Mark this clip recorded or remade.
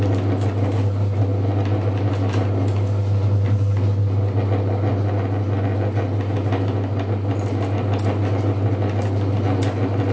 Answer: recorded